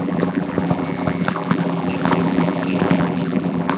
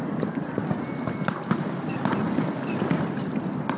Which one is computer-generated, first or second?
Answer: first